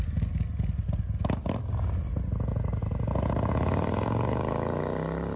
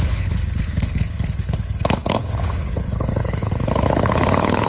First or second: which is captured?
first